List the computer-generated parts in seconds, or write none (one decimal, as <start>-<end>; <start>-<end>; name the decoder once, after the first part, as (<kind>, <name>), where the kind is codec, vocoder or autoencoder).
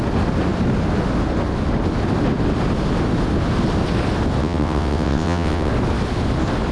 4.4-5.7 (vocoder, WaveNeXt)